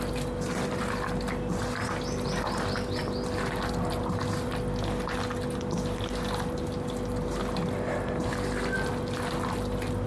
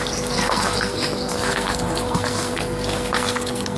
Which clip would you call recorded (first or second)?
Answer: first